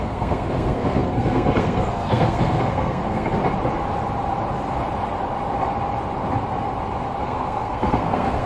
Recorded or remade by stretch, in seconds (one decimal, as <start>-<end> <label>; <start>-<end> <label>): 0.0-3.4 remade; 3.4-7.2 recorded; 7.2-8.5 remade

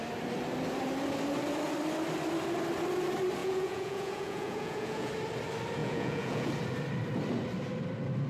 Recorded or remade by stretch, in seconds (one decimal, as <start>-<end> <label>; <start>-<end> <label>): 0.0-3.4 recorded; 3.4-5.1 remade; 5.1-5.8 recorded; 5.8-6.5 remade; 6.5-8.3 recorded

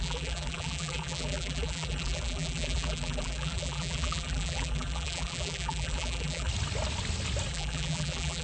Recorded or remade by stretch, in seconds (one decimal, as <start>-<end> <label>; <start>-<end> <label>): 0.0-6.5 remade; 6.5-7.5 recorded; 7.5-8.4 remade

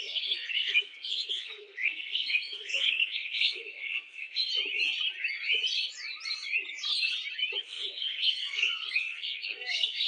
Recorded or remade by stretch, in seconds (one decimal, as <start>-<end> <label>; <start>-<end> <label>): 0.0-4.5 remade; 4.5-7.6 recorded; 7.6-10.1 remade

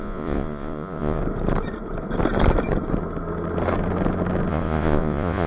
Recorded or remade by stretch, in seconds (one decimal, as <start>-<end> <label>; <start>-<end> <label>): 0.0-1.2 remade; 1.2-4.5 recorded; 4.5-5.5 remade

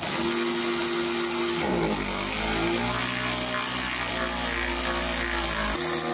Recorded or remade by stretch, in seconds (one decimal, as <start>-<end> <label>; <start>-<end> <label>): 0.0-6.1 recorded

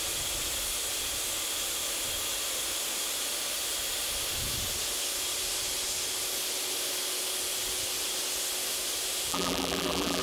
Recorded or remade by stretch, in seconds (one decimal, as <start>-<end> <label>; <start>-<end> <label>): 0.0-9.3 recorded; 9.3-10.2 remade